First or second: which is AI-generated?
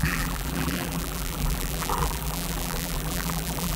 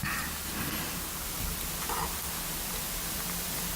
first